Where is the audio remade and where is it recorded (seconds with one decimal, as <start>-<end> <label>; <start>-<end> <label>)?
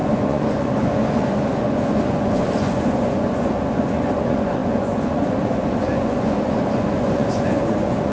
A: 0.0-8.1 remade